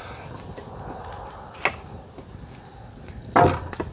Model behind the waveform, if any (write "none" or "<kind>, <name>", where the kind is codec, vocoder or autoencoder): none